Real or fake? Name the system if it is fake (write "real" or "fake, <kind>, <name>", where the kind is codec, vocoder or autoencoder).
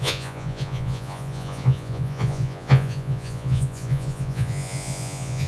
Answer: fake, vocoder, Vocos